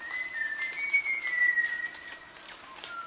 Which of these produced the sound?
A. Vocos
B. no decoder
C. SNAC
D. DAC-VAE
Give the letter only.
B